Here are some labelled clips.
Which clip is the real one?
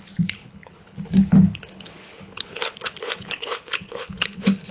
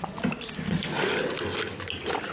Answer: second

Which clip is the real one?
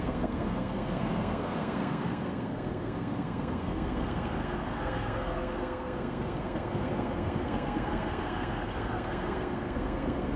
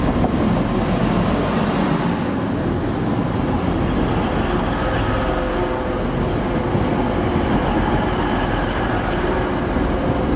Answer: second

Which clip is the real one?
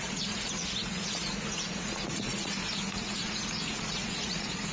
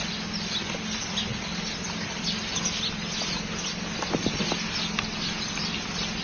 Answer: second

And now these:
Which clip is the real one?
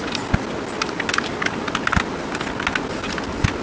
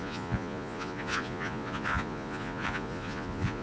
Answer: first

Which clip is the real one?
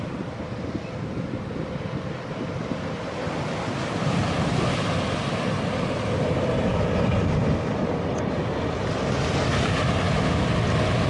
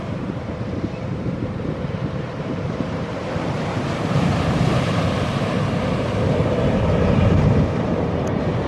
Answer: first